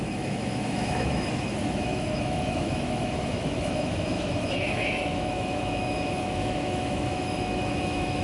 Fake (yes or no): yes